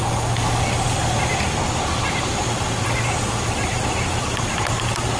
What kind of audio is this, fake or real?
real